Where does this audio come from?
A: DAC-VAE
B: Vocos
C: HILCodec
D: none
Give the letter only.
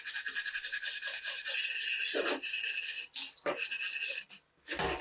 D